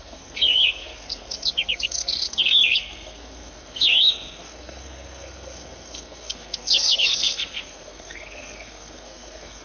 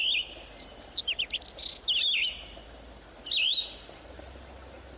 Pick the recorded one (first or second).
second